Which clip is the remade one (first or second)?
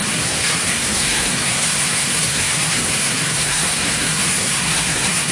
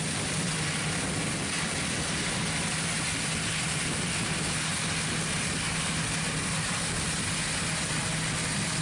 first